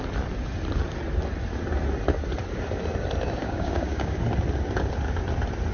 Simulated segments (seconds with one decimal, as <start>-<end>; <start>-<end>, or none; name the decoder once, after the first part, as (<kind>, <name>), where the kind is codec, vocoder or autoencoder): 3.4-4.2 (codec, DAC)